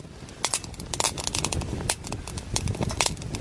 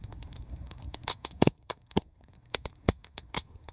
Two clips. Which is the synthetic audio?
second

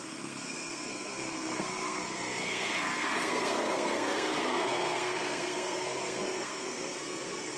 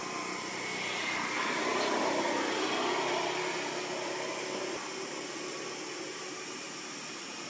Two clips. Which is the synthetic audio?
first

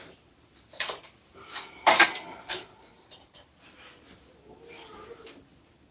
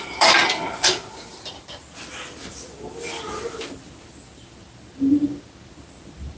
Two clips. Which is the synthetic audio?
first